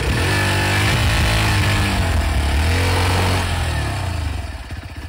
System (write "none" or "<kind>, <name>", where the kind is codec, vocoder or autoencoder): none